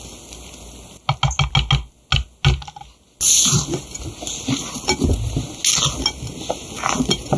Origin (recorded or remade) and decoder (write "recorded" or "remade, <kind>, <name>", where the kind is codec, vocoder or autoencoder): recorded